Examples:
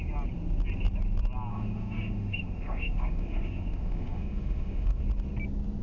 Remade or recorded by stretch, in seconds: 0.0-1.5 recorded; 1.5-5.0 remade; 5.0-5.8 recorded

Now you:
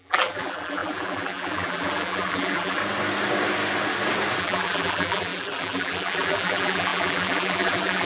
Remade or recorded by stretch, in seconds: 0.0-2.8 remade; 2.8-4.4 recorded; 4.4-8.0 remade

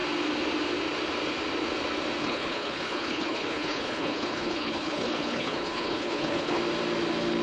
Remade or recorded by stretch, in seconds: 0.0-2.2 recorded; 2.2-6.6 remade; 6.6-7.4 recorded

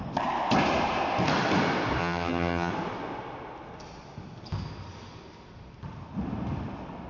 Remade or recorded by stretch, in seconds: 0.0-2.0 recorded; 2.0-2.7 remade; 2.7-7.1 recorded

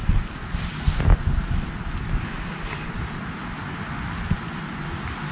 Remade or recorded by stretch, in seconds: 0.0-5.3 recorded